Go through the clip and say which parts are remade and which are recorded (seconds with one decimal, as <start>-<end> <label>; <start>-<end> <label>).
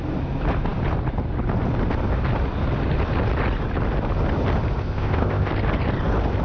0.0-4.8 recorded; 4.8-5.5 remade; 5.5-6.4 recorded